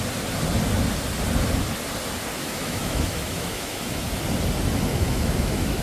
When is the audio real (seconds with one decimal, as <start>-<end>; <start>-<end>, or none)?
0.0-2.3; 4.1-4.9